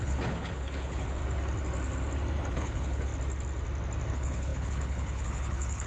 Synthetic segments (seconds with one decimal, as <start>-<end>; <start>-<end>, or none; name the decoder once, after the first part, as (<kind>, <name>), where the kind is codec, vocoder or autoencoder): 0.0-1.2 (codec, HILCodec); 2.5-3.1; 4.1-5.9